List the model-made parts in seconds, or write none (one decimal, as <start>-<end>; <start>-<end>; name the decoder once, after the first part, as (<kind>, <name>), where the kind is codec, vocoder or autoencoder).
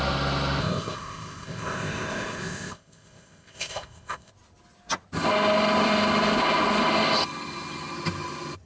0.6-4.3 (codec, ZipCodec)